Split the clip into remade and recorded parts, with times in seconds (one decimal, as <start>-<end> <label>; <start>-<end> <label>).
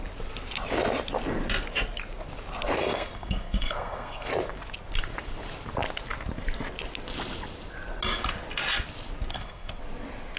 0.0-2.8 recorded; 2.8-4.3 remade; 4.3-9.3 recorded; 9.3-9.8 remade; 9.8-10.4 recorded